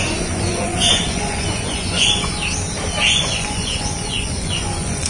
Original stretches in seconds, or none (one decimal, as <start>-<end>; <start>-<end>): 2.4-3.1